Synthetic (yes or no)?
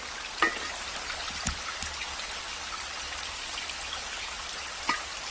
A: no